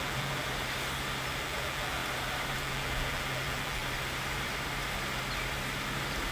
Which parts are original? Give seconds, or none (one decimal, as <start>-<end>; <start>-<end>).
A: 0.4-1.4; 2.0-2.5; 3.8-6.3

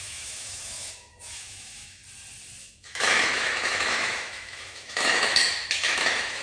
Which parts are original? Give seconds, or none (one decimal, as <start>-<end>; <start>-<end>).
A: 2.0-2.6

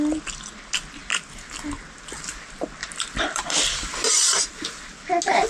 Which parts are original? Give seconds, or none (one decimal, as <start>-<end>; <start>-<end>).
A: 0.0-2.8; 4.8-5.5

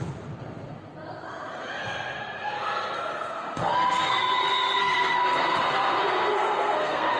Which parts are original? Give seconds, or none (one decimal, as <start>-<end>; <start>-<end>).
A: 0.0-1.8; 4.2-4.8

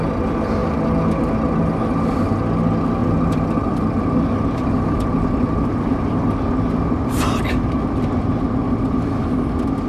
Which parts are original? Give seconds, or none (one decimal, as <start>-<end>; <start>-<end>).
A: 0.0-3.0; 6.5-9.9

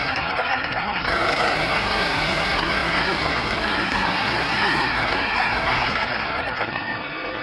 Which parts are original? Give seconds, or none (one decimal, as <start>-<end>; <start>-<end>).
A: none

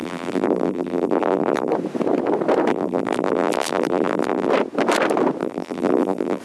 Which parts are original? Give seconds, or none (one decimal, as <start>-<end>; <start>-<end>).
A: 1.7-2.7; 4.5-5.4

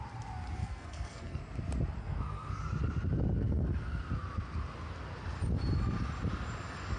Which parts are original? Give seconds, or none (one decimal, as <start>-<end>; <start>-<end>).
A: 0.0-0.6; 1.4-2.0; 2.6-3.4; 4.0-7.0